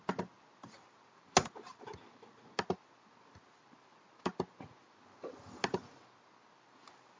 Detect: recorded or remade recorded